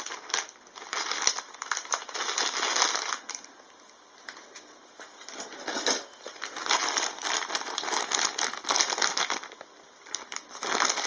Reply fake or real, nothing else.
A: real